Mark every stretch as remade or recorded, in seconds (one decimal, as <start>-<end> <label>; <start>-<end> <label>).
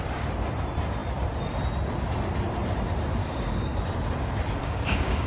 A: 0.0-3.2 recorded; 3.2-3.8 remade; 3.8-4.6 recorded; 4.6-5.3 remade